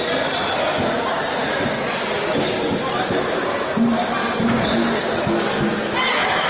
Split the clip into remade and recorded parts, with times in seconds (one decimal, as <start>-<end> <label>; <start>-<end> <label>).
0.0-6.5 recorded